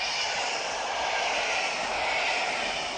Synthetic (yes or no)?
no